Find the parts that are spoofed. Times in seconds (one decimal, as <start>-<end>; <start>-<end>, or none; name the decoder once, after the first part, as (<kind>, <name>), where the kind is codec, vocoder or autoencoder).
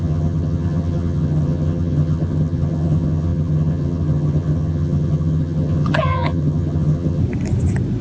0.0-7.2 (vocoder, HiFi-GAN)